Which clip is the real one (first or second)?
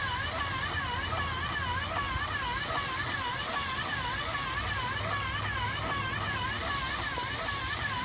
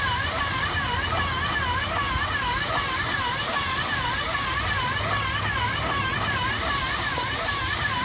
first